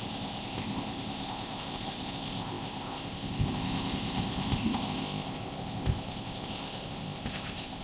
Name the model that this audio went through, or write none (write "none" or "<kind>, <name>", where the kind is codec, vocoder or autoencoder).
codec, ZipCodec